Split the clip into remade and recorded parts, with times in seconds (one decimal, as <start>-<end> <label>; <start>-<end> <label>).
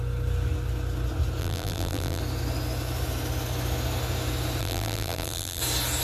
0.0-1.4 recorded; 1.4-2.2 remade; 2.2-4.6 recorded; 4.6-5.6 remade; 5.6-6.0 recorded